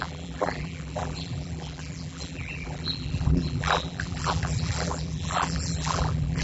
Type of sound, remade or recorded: remade